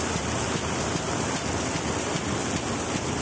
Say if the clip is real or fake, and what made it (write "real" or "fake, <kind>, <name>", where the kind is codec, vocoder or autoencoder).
real